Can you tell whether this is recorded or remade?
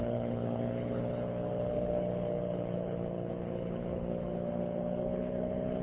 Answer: remade